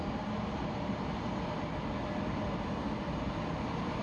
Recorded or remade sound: recorded